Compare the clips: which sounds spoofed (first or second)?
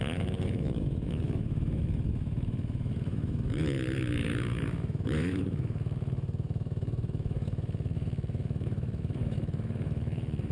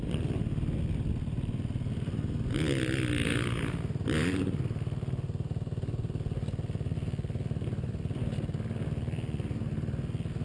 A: first